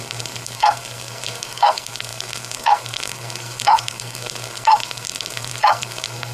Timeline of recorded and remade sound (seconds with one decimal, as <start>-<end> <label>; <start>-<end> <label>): 0.0-6.3 remade